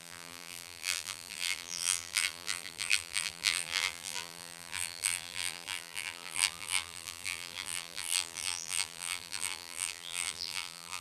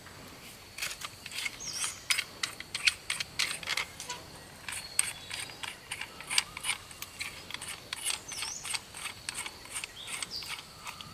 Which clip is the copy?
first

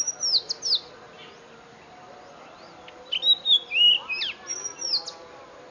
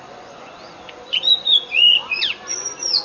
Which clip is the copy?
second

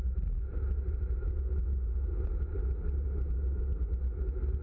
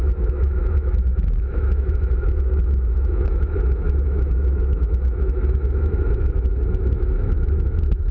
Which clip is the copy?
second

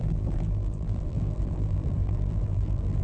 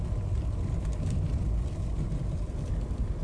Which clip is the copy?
first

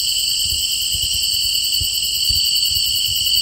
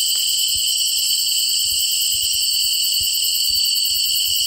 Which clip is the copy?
first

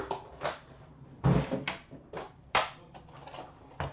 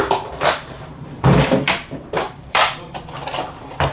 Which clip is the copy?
second